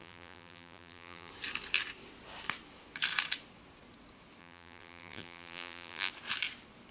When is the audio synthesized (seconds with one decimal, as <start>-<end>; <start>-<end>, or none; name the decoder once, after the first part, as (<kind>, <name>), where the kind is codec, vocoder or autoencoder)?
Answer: 0.0-1.3 (vocoder, BigVGAN v2); 4.4-6.1